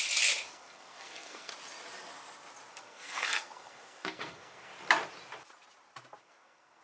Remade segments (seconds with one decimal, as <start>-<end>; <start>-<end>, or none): 0.5-1.5; 2.7-4.7; 6.2-6.8